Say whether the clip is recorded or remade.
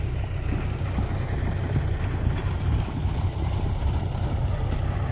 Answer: recorded